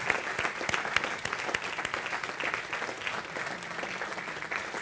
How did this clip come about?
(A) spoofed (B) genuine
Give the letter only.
B